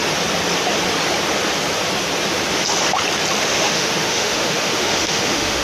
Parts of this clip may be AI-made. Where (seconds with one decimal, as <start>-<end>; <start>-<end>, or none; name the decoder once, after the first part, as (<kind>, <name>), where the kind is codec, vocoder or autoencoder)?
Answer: 3.4-5.6 (autoencoder, DAC-VAE)